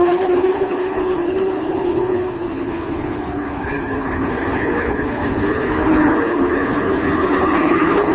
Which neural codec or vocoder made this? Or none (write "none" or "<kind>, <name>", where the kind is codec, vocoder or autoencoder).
codec, HILCodec